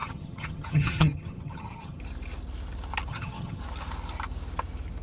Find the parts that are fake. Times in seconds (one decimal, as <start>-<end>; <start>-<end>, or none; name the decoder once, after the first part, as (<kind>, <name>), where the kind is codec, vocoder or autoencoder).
0.0-2.0 (vocoder, HiFi-GAN); 3.1-3.6